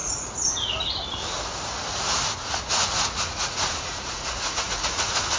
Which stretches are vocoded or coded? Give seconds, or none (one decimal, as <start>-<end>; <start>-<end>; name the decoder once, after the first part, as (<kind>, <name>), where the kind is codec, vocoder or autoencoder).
0.0-0.7 (vocoder, Vocos); 2.4-5.4